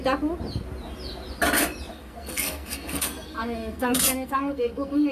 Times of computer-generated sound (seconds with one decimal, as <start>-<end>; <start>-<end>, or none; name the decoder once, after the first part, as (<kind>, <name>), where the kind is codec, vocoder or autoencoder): 1.9-5.1 (codec, SNAC)